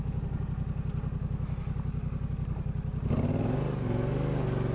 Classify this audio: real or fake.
real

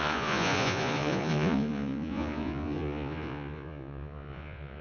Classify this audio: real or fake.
fake